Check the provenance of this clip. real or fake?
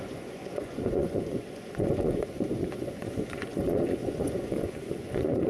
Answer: fake